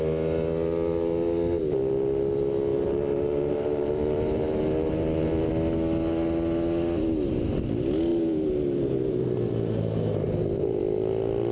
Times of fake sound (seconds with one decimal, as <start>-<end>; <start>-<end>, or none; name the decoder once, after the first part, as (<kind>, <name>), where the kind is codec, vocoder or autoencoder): 2.7-5.5 (vocoder, BigVGAN v2); 8.1-10.8